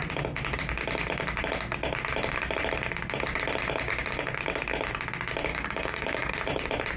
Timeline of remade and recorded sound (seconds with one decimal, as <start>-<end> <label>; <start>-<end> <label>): 0.0-5.5 recorded; 5.5-6.3 remade; 6.3-7.0 recorded